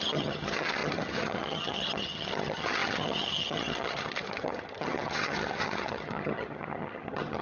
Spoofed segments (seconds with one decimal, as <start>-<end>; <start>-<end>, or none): 0.0-7.4